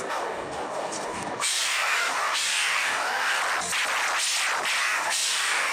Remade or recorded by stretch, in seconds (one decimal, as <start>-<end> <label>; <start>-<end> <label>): 0.0-3.4 remade; 3.4-4.8 recorded; 4.8-5.7 remade